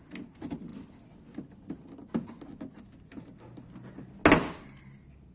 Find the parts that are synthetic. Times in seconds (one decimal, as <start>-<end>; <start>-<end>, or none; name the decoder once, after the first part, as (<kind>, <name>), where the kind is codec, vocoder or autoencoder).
none